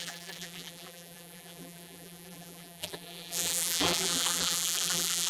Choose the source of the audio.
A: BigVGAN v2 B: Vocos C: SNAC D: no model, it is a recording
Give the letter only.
A